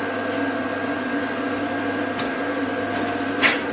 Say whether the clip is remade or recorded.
recorded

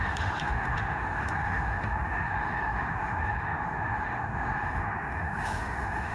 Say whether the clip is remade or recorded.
remade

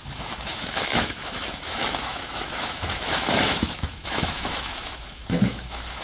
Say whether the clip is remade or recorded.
remade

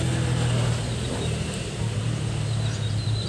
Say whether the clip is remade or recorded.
recorded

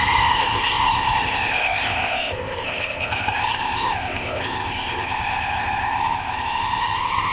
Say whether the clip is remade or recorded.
remade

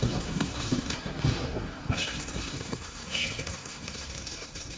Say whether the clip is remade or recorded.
remade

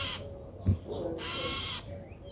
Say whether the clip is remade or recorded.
recorded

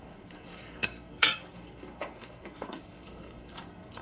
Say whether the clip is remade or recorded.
remade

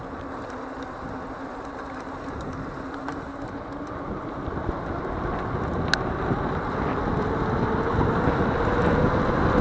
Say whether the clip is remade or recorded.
recorded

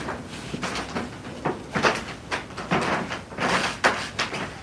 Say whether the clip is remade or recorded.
recorded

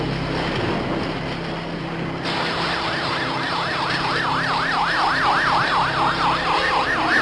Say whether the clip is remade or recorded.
recorded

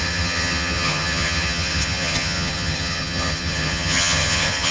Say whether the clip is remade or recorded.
remade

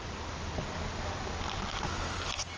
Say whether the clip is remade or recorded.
recorded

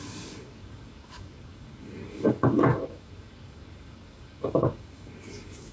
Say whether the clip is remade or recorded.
remade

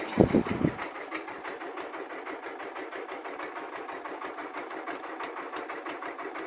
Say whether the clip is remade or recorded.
recorded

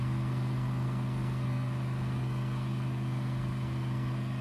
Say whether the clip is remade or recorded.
remade